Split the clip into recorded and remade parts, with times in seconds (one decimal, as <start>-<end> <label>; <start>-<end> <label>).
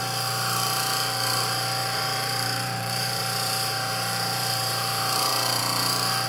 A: 0.0-1.8 recorded; 1.8-5.6 remade; 5.6-6.3 recorded